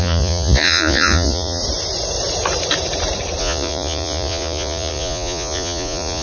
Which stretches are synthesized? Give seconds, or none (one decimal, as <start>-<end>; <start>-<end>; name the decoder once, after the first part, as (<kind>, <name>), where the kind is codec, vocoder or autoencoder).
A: 0.0-1.6 (vocoder, Vocos); 3.4-6.2